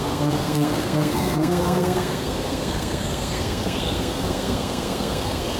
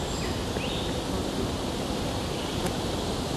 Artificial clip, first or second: first